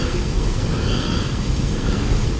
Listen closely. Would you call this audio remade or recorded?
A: remade